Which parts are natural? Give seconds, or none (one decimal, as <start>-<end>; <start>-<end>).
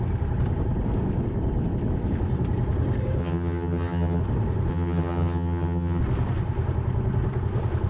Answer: 0.0-3.2; 4.2-4.7; 6.0-7.9